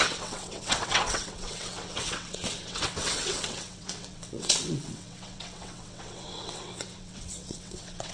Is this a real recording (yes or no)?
no